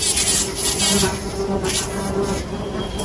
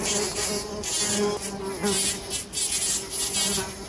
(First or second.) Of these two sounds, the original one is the second